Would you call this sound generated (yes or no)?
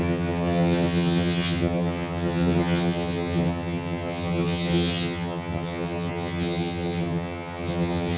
yes